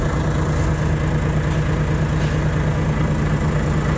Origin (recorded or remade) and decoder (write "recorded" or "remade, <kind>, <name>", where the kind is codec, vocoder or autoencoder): recorded